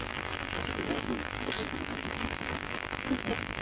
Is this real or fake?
fake